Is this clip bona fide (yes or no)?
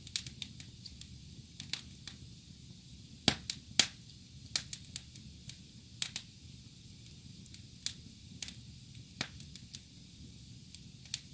yes